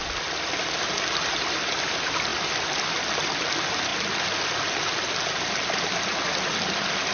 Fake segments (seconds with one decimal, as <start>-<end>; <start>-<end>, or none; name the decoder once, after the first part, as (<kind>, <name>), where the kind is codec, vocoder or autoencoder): none

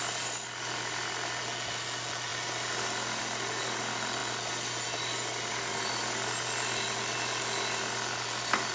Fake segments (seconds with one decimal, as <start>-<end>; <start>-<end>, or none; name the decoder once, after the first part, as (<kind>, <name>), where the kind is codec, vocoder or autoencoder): none

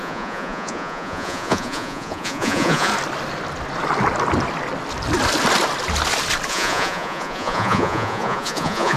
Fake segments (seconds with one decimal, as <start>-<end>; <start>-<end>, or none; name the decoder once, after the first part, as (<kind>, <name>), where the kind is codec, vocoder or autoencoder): 0.0-2.9 (vocoder, Vocos); 6.5-9.0